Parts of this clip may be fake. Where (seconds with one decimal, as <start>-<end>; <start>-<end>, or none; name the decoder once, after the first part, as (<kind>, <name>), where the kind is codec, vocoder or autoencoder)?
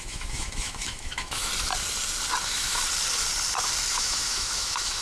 0.0-1.5 (autoencoder, DAC-VAE); 2.4-2.8; 3.9-5.0